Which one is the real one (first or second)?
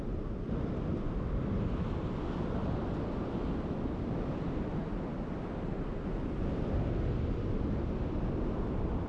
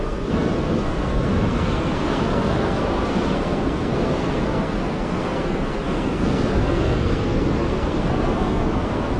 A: first